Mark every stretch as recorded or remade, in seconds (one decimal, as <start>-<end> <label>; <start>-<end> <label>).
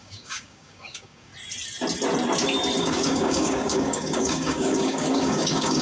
0.0-1.3 remade; 1.3-2.8 recorded; 2.8-5.8 remade